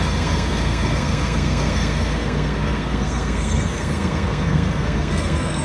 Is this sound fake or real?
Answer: fake